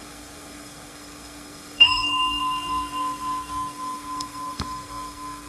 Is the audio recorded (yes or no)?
no